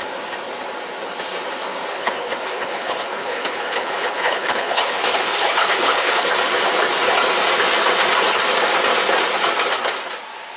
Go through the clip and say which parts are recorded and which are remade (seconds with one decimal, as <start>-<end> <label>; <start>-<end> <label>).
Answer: 0.0-1.9 recorded; 1.9-6.2 remade; 6.2-10.6 recorded